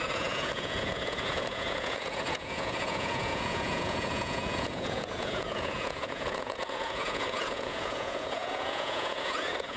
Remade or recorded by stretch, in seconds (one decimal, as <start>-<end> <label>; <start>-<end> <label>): 0.0-9.8 remade